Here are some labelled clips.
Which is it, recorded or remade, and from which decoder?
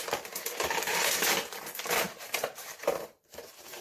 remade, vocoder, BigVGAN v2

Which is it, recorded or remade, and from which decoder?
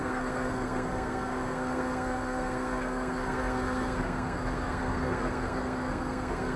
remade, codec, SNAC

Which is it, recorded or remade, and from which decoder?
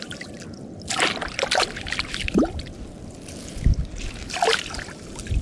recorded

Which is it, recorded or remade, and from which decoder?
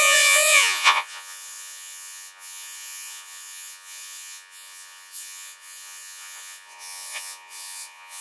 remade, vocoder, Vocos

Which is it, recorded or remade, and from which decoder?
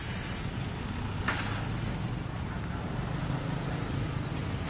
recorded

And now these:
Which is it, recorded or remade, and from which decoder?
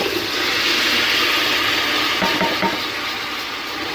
recorded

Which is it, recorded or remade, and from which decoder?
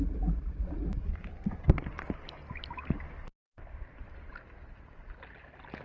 recorded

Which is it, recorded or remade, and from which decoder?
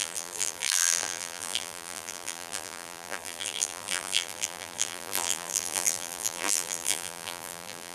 remade, vocoder, BigVGAN v2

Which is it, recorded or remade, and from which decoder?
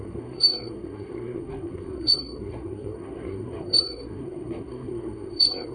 remade, codec, SNAC